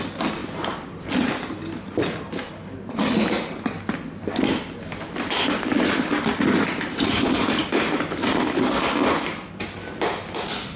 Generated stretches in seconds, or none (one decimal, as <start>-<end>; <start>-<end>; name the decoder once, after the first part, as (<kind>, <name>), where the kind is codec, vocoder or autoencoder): none